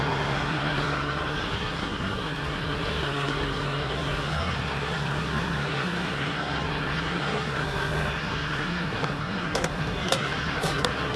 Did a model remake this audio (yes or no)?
yes